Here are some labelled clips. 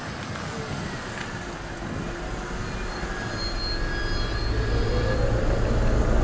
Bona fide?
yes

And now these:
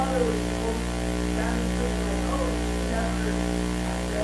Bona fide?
yes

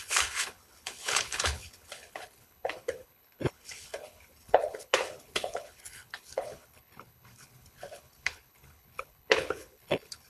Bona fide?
no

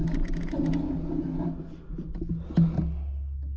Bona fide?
yes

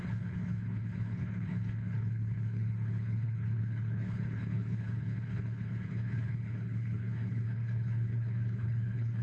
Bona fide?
no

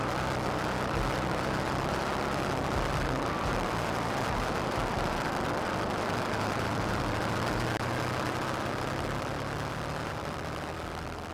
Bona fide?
no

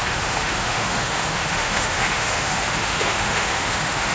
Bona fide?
no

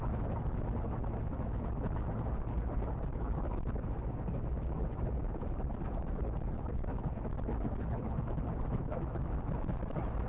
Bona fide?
no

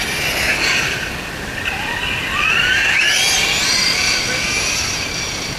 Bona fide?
yes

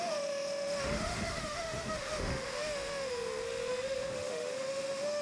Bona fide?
no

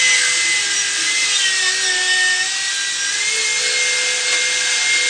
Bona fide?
yes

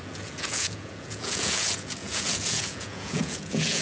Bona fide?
no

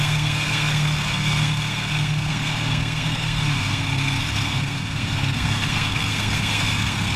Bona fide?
no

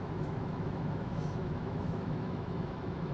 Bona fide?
no